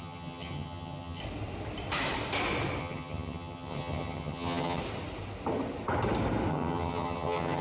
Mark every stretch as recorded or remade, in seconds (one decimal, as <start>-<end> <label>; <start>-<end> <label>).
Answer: 0.0-1.2 remade; 1.2-2.8 recorded; 2.8-4.8 remade; 4.8-6.5 recorded; 6.5-7.6 remade